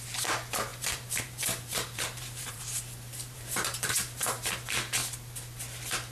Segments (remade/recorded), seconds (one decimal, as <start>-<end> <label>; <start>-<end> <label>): 0.0-0.7 recorded; 0.7-4.4 remade; 4.4-6.1 recorded